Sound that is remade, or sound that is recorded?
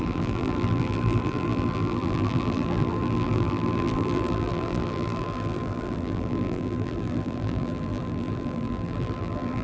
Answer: remade